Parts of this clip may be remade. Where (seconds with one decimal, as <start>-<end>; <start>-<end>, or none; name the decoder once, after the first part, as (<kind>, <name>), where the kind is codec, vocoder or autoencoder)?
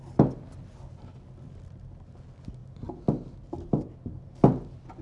none